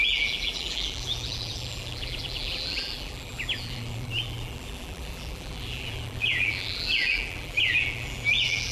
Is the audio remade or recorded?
remade